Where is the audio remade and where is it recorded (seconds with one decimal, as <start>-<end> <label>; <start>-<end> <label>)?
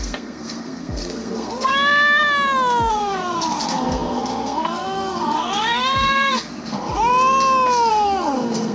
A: 0.0-1.7 remade; 1.7-2.9 recorded; 2.9-7.1 remade; 7.1-7.9 recorded; 7.9-8.7 remade